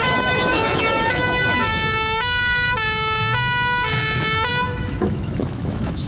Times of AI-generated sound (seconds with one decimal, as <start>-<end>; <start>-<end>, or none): 0.0-6.1